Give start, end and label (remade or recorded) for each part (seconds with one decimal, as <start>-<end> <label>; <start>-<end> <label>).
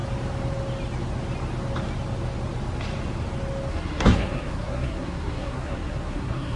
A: 0.0-3.7 recorded; 3.7-6.6 remade